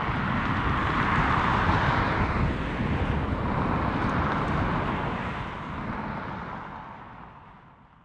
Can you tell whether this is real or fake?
real